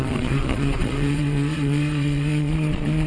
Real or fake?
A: fake